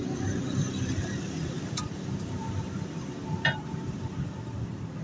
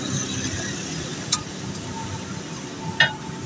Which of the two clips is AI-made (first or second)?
first